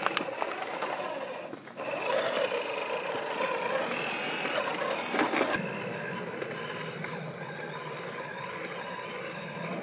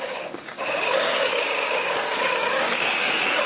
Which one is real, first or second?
first